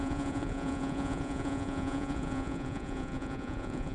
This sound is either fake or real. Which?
fake